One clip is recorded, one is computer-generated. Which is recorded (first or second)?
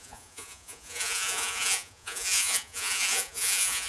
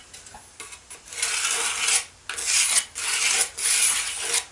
second